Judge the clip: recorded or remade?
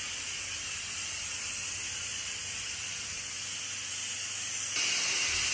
recorded